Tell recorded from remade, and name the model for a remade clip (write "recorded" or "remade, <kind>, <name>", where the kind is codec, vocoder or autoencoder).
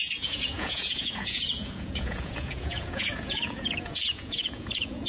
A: remade, vocoder, Vocos